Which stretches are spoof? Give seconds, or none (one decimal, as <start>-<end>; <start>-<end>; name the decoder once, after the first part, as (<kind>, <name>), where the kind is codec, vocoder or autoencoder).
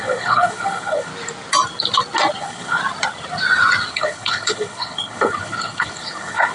0.0-1.1 (codec, HILCodec); 2.4-2.8; 3.9-6.5